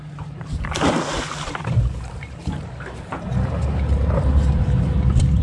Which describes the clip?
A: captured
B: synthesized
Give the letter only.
A